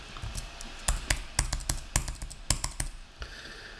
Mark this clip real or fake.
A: real